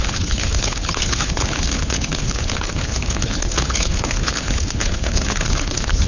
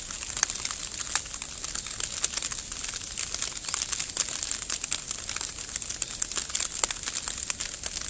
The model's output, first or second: first